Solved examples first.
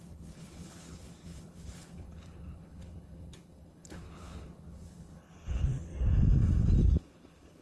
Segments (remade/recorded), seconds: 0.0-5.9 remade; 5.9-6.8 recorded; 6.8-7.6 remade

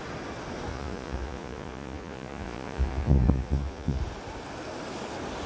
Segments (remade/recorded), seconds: 0.0-0.7 recorded; 0.7-4.0 remade; 4.0-5.5 recorded

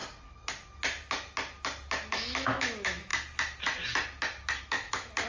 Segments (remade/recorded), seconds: 0.0-2.1 recorded; 2.1-3.1 remade; 3.1-4.6 recorded; 4.6-5.3 remade